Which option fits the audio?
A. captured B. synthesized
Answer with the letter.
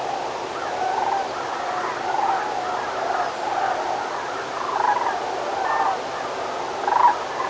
A